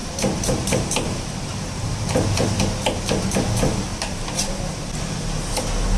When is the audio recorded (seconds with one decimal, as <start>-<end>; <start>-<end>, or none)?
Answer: 2.6-6.0